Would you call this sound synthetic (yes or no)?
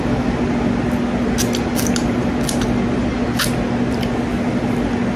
no